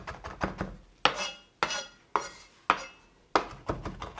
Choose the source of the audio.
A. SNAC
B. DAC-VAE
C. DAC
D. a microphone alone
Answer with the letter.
D